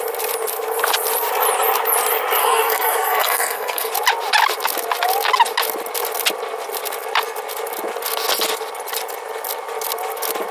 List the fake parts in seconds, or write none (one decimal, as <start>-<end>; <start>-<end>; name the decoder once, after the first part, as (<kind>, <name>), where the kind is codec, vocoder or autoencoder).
2.4-3.9 (codec, SNAC)